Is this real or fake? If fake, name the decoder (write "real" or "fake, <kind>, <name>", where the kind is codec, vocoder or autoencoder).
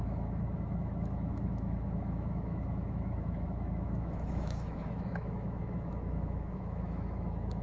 fake, autoencoder, DAC-VAE